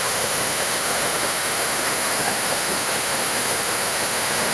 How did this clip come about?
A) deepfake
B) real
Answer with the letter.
A